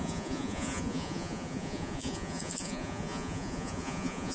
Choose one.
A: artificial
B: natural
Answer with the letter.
A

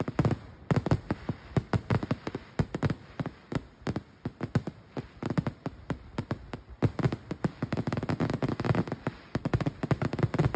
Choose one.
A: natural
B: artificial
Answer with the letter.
A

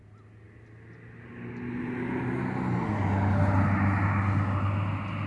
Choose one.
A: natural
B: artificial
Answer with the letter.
A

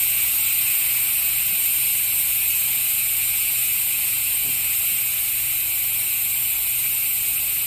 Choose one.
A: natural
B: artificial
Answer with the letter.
B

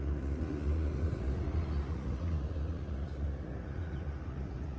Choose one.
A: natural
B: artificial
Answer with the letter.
B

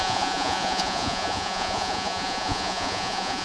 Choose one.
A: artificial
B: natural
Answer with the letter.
A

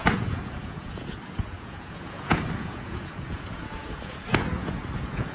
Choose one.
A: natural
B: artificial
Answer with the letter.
B